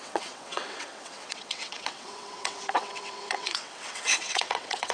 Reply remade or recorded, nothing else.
remade